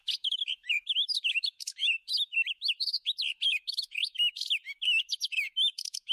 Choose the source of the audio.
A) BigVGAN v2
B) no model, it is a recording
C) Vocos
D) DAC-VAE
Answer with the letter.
D